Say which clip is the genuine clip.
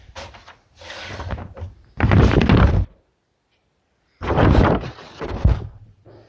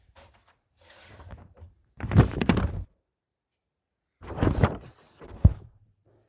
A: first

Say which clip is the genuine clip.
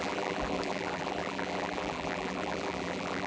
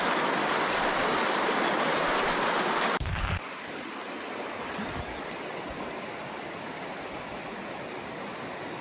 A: second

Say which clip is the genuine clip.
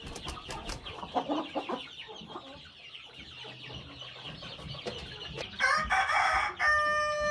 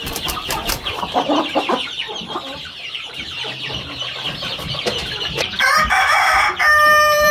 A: first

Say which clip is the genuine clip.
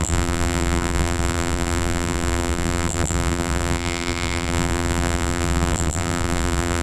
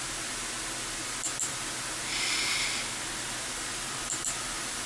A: second